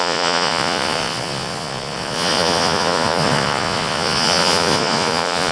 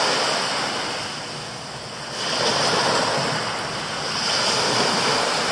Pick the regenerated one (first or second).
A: first